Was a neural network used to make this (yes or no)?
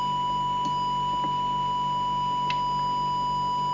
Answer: no